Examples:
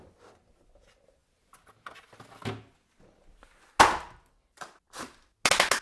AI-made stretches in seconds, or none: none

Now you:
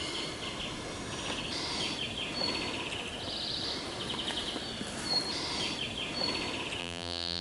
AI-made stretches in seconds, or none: 6.8-7.4 (vocoder, BigVGAN v2)

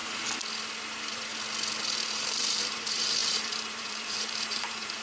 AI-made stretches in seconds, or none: 0.8-1.3 (vocoder, BigVGAN v2); 1.8-5.0

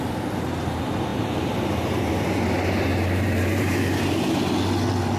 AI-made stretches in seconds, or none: 1.1-2.2 (vocoder, BigVGAN v2); 2.9-4.5